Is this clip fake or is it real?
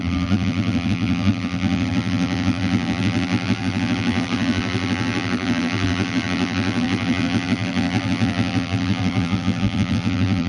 fake